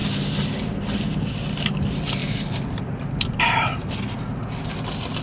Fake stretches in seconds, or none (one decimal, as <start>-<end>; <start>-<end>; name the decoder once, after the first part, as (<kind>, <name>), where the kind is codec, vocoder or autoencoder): 2.2-3.9 (vocoder, BigVGAN v2)

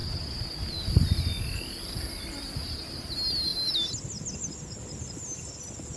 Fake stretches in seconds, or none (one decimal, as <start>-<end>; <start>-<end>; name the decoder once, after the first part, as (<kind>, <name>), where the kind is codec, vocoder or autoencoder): none

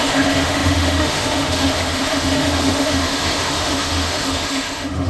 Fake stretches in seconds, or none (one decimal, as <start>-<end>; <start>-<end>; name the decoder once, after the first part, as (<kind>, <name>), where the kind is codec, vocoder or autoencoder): 0.0-5.1 (autoencoder, DAC-VAE)

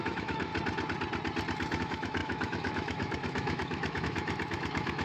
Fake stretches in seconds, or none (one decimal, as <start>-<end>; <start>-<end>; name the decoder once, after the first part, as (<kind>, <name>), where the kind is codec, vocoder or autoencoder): 0.0-0.5 (autoencoder, DAC-VAE); 1.8-5.0